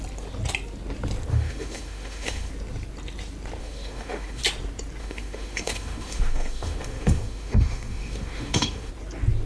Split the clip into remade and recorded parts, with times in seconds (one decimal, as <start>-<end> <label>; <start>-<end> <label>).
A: 0.0-1.3 recorded; 1.3-2.5 remade; 2.5-3.6 recorded; 3.6-4.4 remade; 4.4-5.0 recorded; 5.0-8.9 remade; 8.9-9.5 recorded